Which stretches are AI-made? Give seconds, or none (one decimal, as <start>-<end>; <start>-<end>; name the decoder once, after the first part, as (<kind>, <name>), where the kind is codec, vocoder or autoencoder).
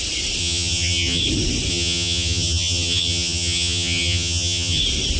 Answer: 0.4-1.2 (vocoder, HiFi-GAN); 1.7-4.8